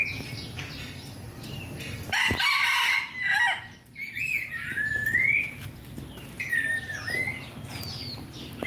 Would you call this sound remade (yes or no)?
no